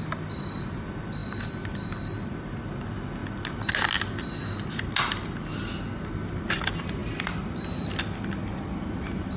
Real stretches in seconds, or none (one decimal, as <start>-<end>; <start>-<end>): 0.0-9.4

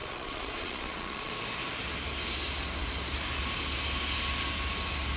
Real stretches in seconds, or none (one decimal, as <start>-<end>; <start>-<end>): 1.3-5.2

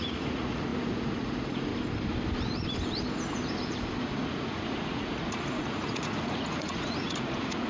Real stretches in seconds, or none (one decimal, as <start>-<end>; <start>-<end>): 1.7-4.0